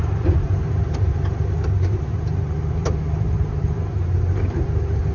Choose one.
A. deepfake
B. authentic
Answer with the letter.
A